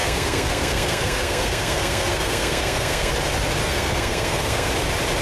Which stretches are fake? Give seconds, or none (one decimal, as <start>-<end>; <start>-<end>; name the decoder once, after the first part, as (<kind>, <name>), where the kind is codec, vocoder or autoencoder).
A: 0.0-3.1 (codec, SNAC); 3.6-4.7